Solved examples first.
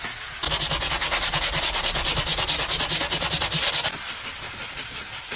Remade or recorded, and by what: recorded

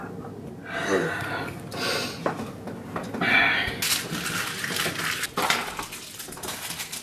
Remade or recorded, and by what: recorded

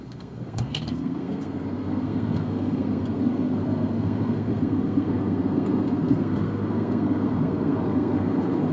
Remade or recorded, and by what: remade, codec, SNAC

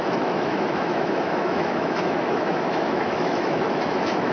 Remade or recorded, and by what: remade, autoencoder, DAC-VAE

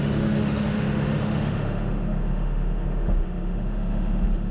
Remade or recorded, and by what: remade, autoencoder, DAC-VAE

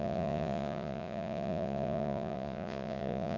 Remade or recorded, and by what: remade, vocoder, Vocos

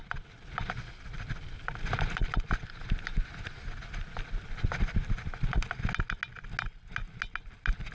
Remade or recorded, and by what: recorded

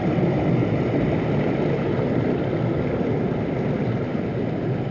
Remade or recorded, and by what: recorded